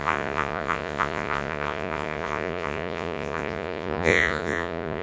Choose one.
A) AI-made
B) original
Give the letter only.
A